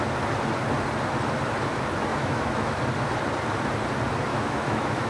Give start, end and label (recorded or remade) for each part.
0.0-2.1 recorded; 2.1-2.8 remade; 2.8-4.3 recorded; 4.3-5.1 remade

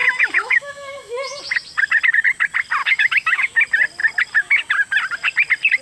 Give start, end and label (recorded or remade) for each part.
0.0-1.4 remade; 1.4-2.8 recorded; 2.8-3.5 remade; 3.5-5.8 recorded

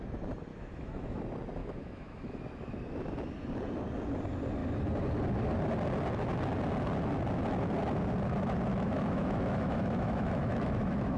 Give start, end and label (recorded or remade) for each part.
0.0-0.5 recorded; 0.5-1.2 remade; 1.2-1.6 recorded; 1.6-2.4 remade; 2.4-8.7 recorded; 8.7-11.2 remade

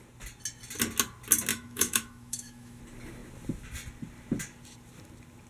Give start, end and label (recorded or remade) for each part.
0.0-1.5 recorded; 1.5-2.8 remade; 2.8-5.5 recorded